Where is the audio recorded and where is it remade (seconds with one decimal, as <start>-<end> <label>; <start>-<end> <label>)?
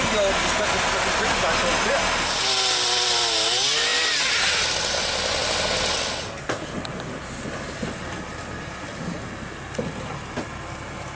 0.0-11.1 recorded